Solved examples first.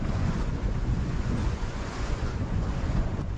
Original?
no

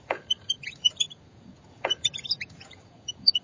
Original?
no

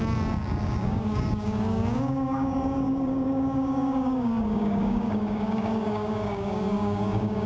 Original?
no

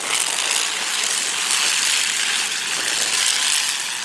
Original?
yes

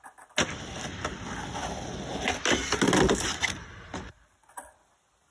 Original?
yes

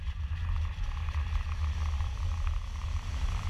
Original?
no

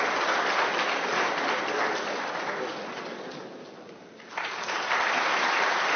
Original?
yes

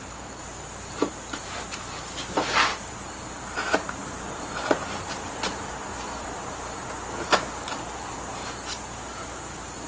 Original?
no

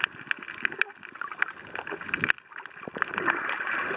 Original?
yes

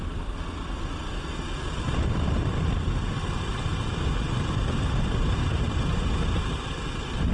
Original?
yes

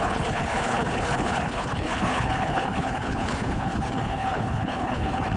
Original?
no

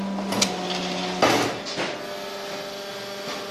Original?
yes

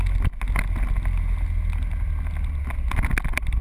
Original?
yes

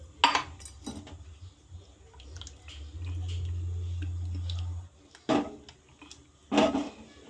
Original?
yes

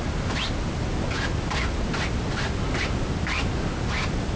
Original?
yes